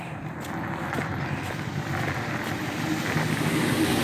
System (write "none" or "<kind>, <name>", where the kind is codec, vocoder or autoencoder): none